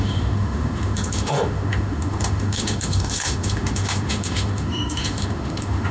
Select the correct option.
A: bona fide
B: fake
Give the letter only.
B